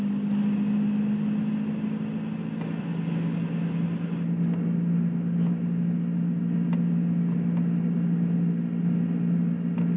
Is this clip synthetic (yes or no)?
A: no